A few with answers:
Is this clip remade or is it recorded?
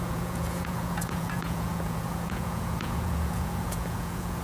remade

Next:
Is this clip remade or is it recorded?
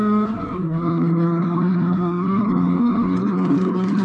remade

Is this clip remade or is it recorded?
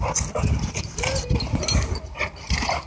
recorded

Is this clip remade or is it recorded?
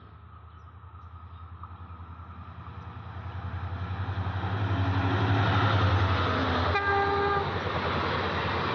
recorded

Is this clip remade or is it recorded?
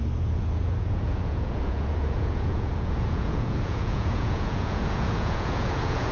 remade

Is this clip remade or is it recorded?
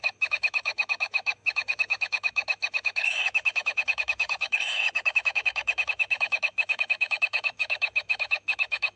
remade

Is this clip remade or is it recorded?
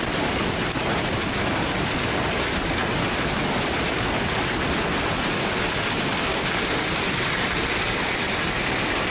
remade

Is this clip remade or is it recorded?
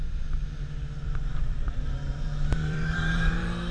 remade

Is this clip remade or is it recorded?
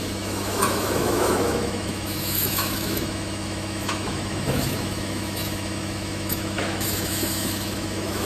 remade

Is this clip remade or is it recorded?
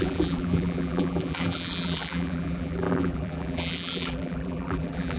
remade